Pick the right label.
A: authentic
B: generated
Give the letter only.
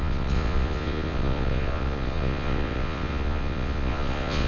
B